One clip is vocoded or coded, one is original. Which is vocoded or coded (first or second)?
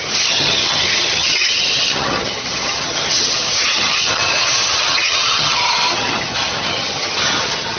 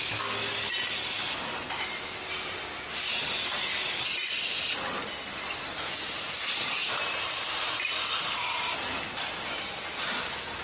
first